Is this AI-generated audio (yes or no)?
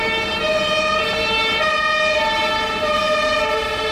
no